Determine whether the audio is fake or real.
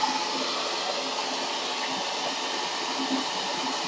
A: real